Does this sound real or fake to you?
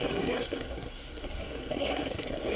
fake